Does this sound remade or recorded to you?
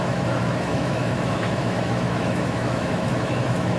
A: remade